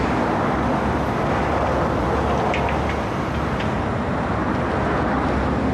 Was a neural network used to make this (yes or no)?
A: no